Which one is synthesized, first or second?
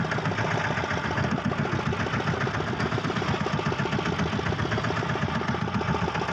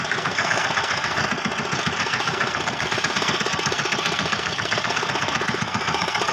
second